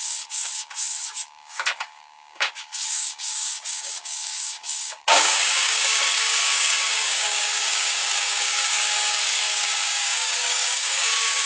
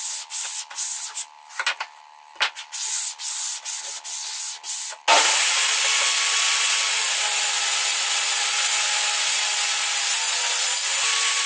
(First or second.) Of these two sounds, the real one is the second